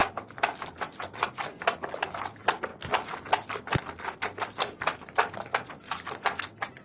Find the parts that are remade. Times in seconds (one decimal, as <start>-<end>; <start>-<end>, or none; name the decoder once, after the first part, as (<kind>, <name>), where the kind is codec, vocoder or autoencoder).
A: none